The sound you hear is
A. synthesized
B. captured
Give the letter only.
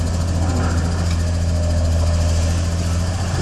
B